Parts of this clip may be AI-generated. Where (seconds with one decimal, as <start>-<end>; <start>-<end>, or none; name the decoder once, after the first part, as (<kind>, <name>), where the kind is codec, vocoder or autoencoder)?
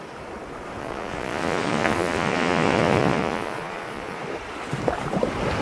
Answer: 0.8-4.2 (vocoder, Vocos)